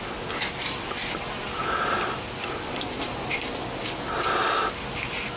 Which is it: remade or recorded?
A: recorded